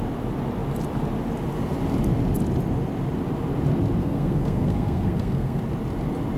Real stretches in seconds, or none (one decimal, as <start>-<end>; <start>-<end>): 0.0-4.0; 5.6-6.4